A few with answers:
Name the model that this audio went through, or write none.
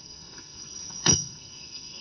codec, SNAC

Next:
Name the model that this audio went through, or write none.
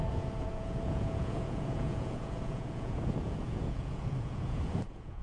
vocoder, Vocos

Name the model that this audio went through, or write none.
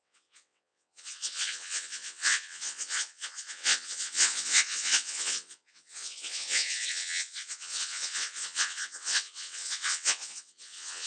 vocoder, WaveNeXt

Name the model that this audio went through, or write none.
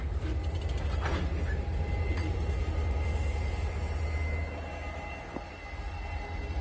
none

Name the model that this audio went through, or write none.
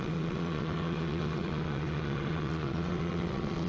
vocoder, WaveNeXt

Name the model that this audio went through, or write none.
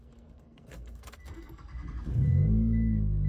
codec, SNAC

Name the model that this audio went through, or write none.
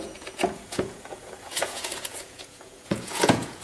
vocoder, Vocos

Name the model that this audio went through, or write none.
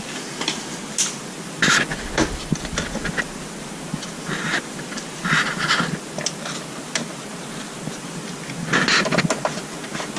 none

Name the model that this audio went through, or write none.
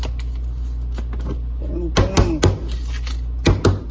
none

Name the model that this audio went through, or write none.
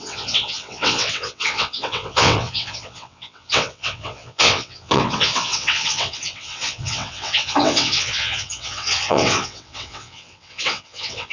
vocoder, WaveNeXt